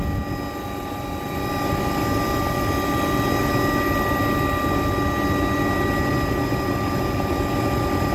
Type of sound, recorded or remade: recorded